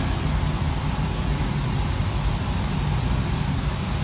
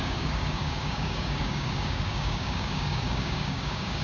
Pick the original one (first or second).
first